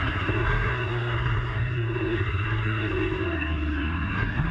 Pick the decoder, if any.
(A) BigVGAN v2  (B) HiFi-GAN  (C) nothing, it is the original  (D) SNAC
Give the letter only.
D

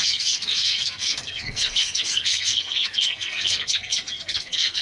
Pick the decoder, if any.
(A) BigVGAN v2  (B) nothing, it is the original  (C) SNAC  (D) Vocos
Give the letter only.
C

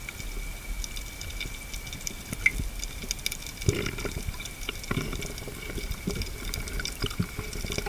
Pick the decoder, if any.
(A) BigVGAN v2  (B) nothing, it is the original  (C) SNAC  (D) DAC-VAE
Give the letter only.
B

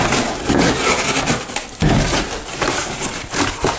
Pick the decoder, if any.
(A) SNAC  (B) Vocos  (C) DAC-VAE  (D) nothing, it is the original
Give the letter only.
D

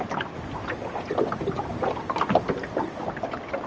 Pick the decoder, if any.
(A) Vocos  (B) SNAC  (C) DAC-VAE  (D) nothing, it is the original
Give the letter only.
D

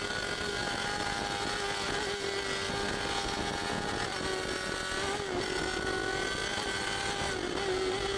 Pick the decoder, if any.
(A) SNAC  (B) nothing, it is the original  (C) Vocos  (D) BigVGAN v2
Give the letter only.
B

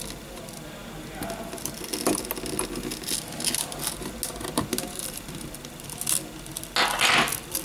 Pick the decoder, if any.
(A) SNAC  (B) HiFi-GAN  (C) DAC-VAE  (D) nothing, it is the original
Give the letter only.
D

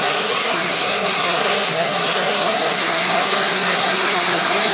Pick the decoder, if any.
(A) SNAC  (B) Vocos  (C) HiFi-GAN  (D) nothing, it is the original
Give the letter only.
A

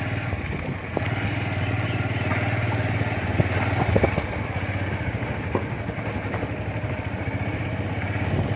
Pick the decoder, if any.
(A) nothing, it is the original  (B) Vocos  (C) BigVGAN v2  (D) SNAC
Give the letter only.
A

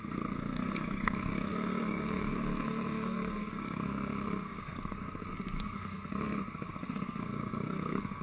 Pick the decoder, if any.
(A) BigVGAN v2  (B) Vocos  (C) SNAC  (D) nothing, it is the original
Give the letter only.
C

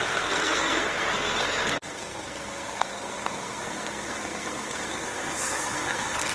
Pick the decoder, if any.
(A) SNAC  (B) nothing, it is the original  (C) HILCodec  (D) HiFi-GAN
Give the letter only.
A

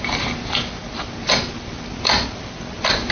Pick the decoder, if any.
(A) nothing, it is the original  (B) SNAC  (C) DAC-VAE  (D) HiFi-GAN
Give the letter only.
A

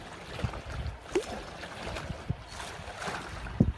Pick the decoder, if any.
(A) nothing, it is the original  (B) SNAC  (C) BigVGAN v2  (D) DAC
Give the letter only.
A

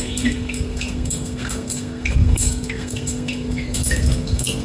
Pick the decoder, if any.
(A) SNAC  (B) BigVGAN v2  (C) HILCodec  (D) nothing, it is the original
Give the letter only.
A